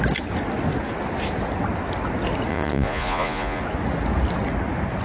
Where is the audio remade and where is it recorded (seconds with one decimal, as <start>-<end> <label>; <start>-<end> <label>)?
0.0-2.5 recorded; 2.5-3.6 remade; 3.6-5.0 recorded